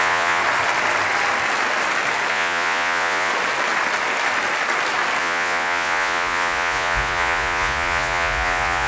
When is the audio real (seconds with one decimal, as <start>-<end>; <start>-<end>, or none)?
0.4-2.3; 3.3-5.2